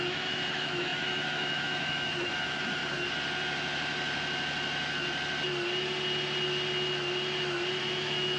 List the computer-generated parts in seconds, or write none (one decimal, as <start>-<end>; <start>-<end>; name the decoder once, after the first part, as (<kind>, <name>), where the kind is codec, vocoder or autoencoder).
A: 0.0-2.8 (autoencoder, DAC-VAE); 7.8-8.4